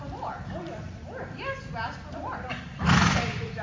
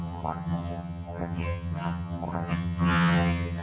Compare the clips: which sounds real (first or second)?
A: first